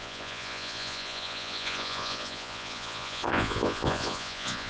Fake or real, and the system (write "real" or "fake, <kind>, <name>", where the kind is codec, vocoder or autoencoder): fake, vocoder, Vocos